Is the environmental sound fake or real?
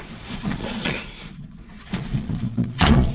fake